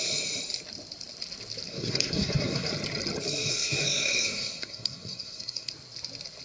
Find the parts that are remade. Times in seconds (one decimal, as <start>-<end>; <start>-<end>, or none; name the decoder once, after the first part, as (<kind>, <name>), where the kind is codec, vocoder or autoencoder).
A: 1.7-2.7 (codec, SNAC); 3.5-5.7